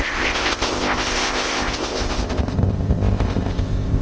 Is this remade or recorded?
remade